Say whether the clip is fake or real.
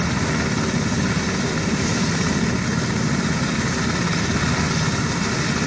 real